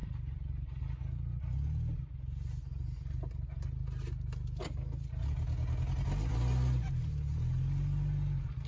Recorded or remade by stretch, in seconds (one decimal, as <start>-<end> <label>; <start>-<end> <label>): 0.0-0.8 remade; 0.8-8.7 recorded